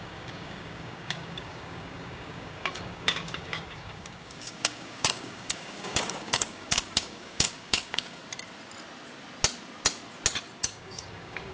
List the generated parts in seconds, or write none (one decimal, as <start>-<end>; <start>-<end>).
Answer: 0.0-8.2; 10.6-11.5

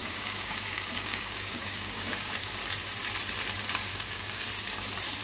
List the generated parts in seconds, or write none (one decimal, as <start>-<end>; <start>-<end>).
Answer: 0.0-2.5; 3.9-4.5

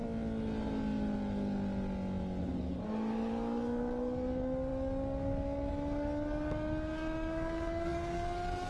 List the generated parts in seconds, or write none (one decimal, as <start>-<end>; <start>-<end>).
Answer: 2.4-8.7

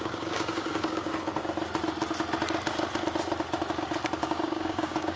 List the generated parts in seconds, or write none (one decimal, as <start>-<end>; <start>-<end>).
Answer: 0.0-1.1; 4.2-5.2

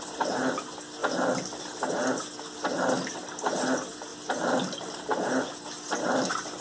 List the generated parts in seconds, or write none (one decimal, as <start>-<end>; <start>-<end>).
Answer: none

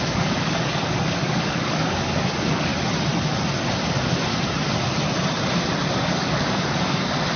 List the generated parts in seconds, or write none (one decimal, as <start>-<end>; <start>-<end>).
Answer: 0.0-2.7; 5.9-7.4

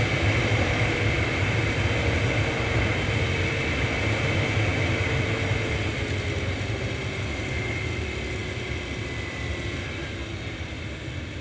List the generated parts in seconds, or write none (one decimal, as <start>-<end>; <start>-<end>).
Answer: none

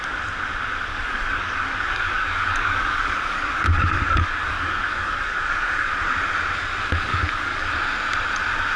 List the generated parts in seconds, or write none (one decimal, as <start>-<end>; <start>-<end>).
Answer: 0.9-5.9; 7.1-7.7